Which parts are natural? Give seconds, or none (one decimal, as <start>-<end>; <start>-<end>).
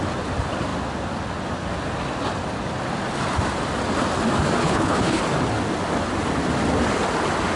0.0-4.6; 5.2-7.6